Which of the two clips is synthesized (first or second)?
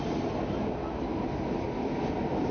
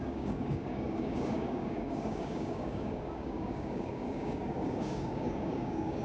second